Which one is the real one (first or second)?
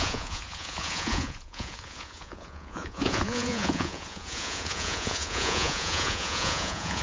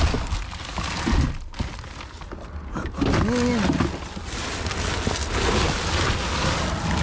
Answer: second